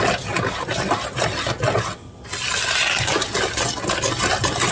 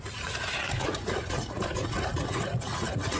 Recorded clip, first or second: first